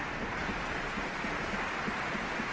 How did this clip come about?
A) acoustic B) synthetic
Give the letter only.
A